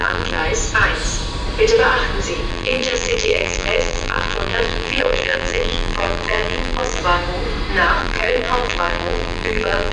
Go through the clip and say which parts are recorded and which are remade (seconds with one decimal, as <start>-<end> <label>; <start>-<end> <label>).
0.0-0.4 remade; 0.4-2.5 recorded; 2.5-7.0 remade; 7.0-8.0 recorded; 8.0-9.9 remade